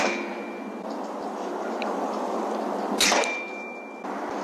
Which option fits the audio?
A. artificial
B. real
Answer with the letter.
B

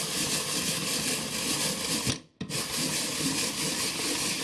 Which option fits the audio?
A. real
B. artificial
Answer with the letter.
A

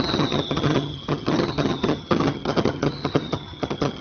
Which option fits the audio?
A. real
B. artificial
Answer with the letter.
B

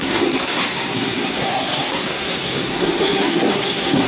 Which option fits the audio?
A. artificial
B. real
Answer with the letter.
A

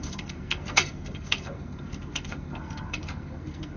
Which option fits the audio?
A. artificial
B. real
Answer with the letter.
A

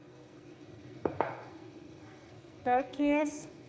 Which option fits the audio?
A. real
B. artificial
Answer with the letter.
B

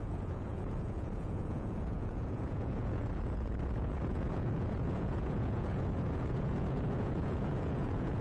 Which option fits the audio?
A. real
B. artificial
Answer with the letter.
B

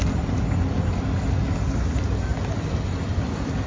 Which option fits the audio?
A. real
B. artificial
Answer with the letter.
A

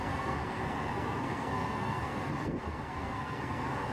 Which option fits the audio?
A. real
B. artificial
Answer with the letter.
B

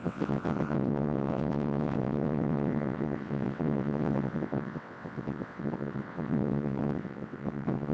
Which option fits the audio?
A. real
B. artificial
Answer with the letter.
B